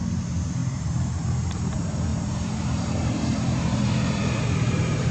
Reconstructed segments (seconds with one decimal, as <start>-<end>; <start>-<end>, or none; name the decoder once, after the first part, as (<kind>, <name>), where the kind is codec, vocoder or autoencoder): 0.6-1.7 (vocoder, BigVGAN v2); 2.1-5.1